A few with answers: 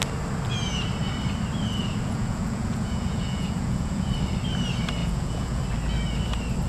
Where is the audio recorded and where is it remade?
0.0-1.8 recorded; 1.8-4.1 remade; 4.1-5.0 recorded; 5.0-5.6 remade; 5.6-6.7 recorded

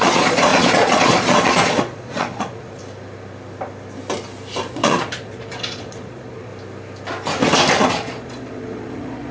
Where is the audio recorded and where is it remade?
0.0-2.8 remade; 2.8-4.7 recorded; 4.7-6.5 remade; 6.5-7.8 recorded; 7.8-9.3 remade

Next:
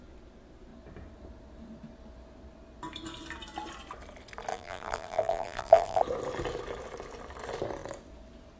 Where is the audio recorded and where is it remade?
0.0-4.5 recorded; 4.5-6.0 remade; 6.0-8.6 recorded

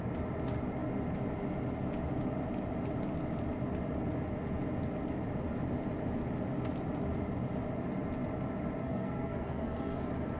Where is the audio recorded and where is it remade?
0.0-8.8 recorded; 8.8-10.0 remade; 10.0-10.4 recorded

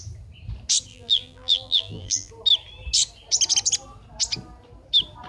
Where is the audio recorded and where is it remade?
0.0-0.9 recorded; 0.9-2.3 remade; 2.3-5.3 recorded